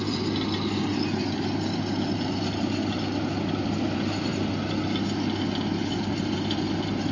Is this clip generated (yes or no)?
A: no